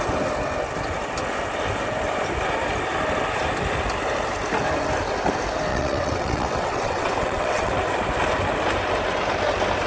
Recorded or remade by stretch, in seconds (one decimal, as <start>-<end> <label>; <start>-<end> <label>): 0.0-5.7 recorded; 5.7-7.7 remade; 7.7-9.9 recorded